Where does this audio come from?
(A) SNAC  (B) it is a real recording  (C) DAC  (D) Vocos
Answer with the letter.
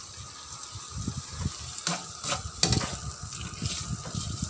B